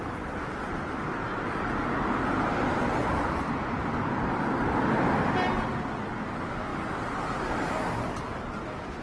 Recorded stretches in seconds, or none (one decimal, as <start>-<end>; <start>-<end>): 0.0-9.0